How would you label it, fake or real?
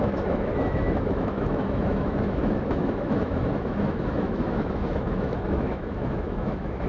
fake